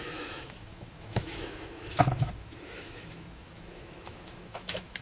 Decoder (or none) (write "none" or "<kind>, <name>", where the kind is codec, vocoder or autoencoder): autoencoder, DAC-VAE